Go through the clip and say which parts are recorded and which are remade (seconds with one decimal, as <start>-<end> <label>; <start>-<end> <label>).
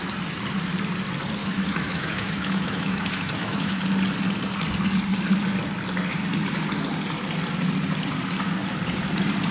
0.0-1.4 recorded; 1.4-3.8 remade; 3.8-9.5 recorded